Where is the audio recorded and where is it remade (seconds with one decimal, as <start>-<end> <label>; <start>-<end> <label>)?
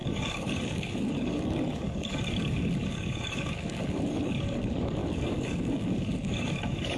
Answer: 0.0-7.0 remade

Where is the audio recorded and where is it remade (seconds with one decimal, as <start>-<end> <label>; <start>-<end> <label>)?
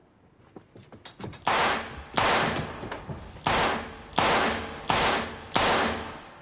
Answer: 0.0-6.4 recorded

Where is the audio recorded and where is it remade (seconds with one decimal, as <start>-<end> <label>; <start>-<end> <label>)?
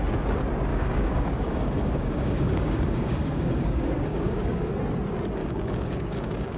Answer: 0.0-0.7 recorded; 0.7-4.7 remade; 4.7-5.4 recorded; 5.4-6.6 remade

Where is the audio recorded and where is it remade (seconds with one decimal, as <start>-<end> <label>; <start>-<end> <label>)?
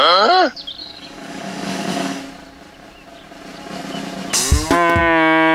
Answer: 0.0-0.8 recorded; 0.8-2.2 remade; 2.2-5.5 recorded